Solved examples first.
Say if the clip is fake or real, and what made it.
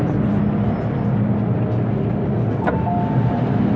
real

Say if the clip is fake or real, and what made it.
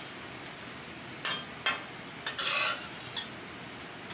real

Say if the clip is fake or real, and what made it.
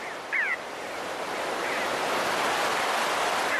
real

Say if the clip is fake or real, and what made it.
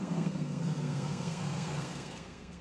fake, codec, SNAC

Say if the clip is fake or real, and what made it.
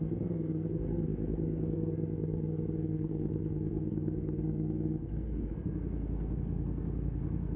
fake, codec, SNAC